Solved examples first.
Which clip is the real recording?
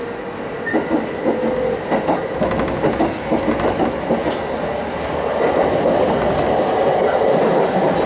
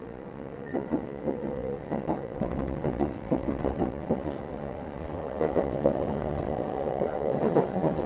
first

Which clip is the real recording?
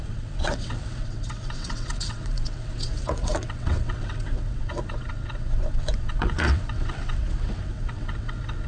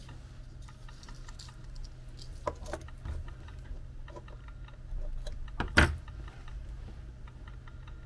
second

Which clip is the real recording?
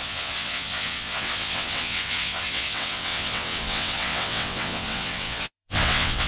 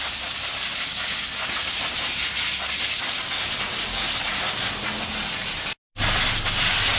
second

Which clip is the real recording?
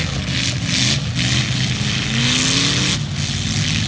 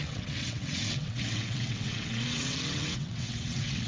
first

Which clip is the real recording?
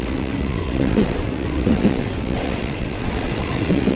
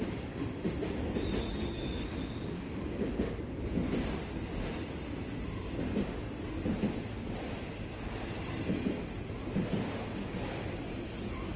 second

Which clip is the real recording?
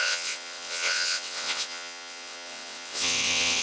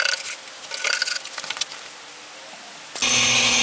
second